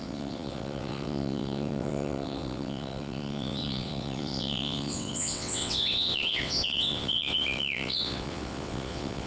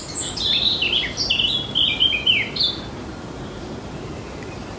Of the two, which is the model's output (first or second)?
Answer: first